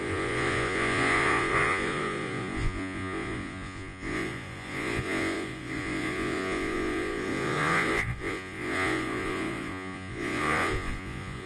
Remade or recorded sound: remade